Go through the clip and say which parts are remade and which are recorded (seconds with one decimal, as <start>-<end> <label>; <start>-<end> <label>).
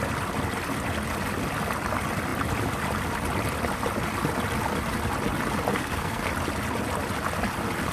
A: 0.0-5.7 recorded; 5.7-6.3 remade; 6.3-7.9 recorded